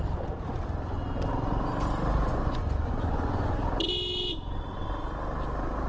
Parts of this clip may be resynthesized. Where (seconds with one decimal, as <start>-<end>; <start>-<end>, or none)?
2.2-3.6